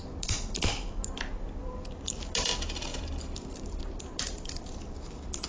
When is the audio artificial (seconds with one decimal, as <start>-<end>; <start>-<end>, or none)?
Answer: 1.6-2.1; 2.9-3.8